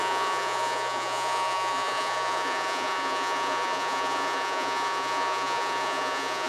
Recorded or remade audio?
remade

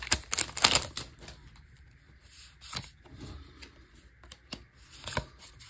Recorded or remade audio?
recorded